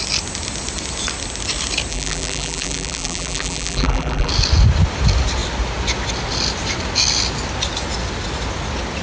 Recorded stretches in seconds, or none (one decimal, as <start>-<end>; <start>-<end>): 0.0-1.9; 4.3-9.0